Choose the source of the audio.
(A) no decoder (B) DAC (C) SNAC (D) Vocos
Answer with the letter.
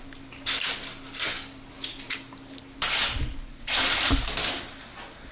A